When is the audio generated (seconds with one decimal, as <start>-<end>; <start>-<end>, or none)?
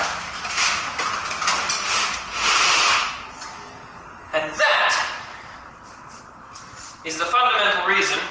4.3-6.2